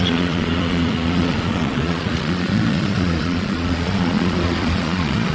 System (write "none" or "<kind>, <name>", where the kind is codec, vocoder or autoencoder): vocoder, Vocos